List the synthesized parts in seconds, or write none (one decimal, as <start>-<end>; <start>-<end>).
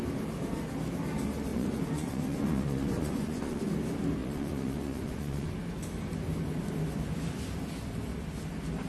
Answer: 1.5-3.6; 4.2-5.5